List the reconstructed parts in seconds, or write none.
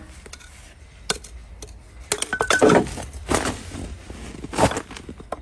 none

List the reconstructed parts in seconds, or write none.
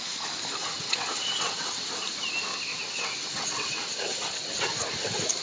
0.6-1.9 (vocoder, WaveNeXt); 2.7-4.7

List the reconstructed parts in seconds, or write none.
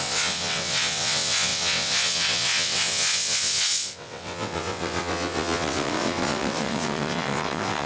0.0-7.9 (vocoder, WaveNeXt)